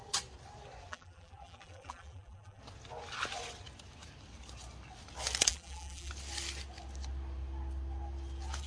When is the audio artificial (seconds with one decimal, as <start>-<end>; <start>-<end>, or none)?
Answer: 0.9-2.6; 5.5-6.1